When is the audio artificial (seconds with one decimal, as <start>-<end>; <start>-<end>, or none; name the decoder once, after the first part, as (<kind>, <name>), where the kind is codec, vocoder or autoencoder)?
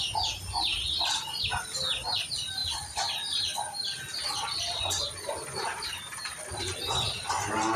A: 0.7-1.4 (vocoder, BigVGAN v2); 2.6-7.3